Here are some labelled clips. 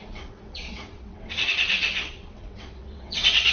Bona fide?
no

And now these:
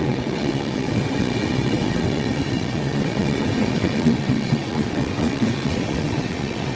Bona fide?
no